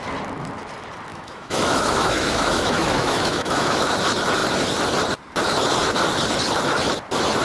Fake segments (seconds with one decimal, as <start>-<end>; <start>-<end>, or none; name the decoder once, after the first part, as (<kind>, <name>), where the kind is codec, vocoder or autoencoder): 1.1-3.8 (autoencoder, DAC-VAE)